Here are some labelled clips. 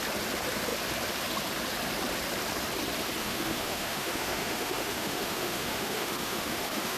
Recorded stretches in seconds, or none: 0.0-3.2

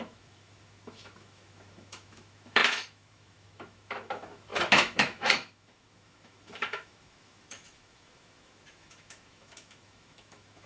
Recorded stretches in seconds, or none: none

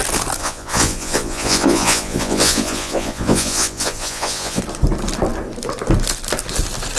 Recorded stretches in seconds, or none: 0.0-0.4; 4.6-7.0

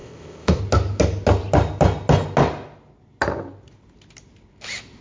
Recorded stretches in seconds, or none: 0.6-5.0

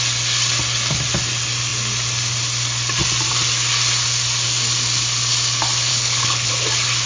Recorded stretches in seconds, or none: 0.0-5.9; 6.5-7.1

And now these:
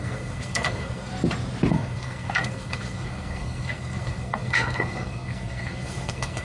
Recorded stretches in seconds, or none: 1.1-1.7

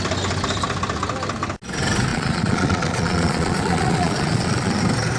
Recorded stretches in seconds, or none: 0.0-2.1; 4.8-5.2